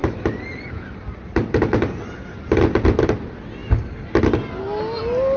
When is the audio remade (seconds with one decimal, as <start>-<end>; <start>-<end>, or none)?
none